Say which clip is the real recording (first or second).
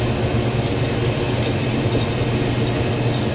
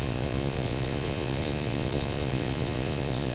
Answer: first